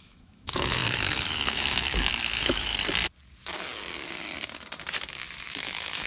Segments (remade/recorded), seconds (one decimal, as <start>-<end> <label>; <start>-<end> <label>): 0.0-2.7 remade; 2.7-5.4 recorded; 5.4-6.1 remade